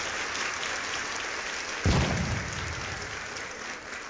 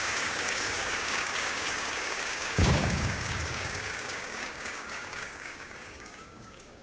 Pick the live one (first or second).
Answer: first